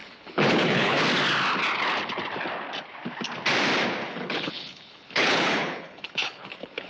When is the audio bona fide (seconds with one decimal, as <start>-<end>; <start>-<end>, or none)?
1.0-4.0